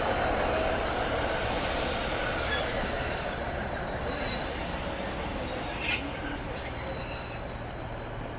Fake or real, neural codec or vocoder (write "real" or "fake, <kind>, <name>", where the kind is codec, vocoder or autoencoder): real